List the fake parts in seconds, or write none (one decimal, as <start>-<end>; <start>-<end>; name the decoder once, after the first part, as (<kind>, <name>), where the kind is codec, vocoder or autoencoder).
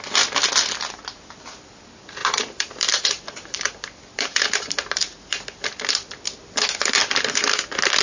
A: 2.2-6.1 (vocoder, BigVGAN v2); 7.0-7.6